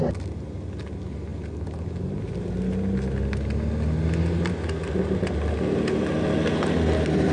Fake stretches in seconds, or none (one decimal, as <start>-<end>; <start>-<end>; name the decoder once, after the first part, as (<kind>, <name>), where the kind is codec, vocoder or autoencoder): none